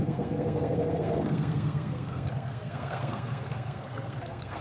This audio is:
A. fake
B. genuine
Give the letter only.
A